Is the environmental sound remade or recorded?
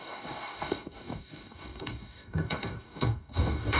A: remade